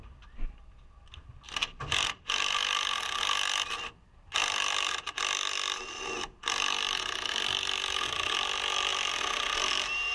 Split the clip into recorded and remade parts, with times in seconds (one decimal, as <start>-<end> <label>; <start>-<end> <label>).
0.0-10.1 recorded